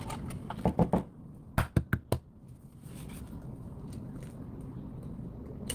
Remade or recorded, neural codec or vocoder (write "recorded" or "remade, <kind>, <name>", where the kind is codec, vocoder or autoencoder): recorded